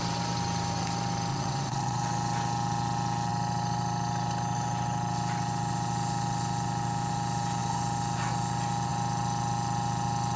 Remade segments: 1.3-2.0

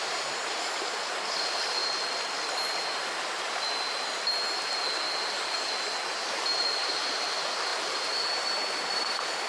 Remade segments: 0.0-1.8; 6.3-9.5

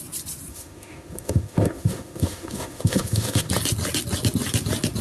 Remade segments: 0.5-3.5

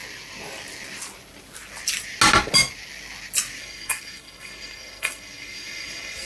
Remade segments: 3.6-6.3